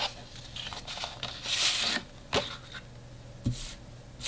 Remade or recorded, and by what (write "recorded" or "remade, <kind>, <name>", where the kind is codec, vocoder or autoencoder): recorded